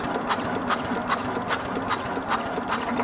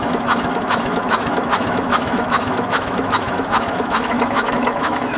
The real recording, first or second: first